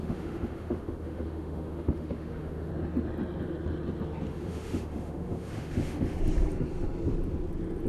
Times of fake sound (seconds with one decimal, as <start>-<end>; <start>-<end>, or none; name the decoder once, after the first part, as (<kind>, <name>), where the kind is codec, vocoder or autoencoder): 0.0-2.7 (autoencoder, DAC-VAE); 4.3-6.2